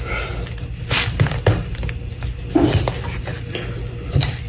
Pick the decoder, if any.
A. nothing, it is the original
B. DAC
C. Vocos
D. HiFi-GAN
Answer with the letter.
A